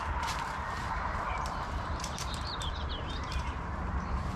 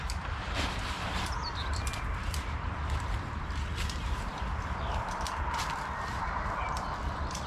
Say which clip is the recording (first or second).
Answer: second